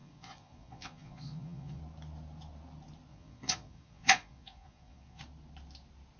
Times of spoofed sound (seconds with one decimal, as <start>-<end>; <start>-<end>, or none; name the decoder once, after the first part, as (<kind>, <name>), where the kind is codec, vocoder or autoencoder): 0.0-1.8 (vocoder, Vocos); 3.1-5.2